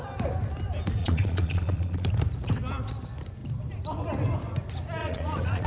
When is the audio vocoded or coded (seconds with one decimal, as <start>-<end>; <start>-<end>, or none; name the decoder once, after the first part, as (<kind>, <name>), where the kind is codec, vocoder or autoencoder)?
1.0-2.1 (vocoder, Vocos); 5.0-5.7

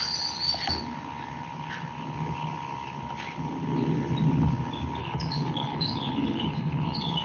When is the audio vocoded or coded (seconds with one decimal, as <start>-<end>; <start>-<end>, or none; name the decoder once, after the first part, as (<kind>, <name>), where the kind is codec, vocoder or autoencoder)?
5.0-7.2 (codec, HILCodec)

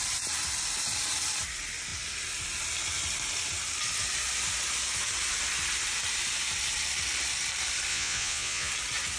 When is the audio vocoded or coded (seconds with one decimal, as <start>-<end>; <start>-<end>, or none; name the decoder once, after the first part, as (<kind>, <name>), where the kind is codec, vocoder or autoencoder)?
7.9-8.7 (vocoder, Vocos)

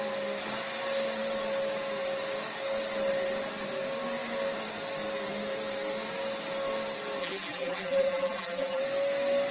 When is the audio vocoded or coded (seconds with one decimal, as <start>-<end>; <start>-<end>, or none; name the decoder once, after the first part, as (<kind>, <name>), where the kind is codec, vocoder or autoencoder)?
7.2-8.8 (vocoder, BigVGAN v2)

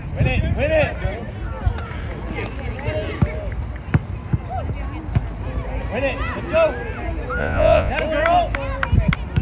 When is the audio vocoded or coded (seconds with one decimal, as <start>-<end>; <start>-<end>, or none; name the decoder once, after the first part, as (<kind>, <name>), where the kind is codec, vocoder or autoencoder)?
7.4-7.9 (vocoder, Vocos)

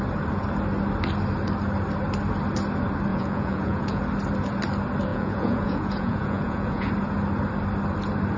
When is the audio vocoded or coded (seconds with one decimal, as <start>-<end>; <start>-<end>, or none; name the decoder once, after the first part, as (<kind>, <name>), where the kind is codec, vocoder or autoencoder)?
3.1-4.0 (vocoder, Vocos); 5.1-6.9

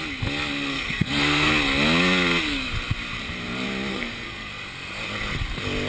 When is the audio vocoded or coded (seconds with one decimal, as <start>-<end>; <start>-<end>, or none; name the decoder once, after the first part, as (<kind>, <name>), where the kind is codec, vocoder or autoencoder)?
0.7-1.5 (codec, SNAC); 3.9-4.5